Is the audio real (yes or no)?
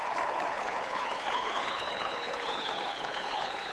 no